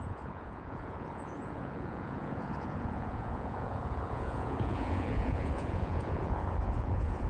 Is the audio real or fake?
fake